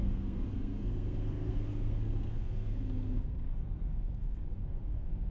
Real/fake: fake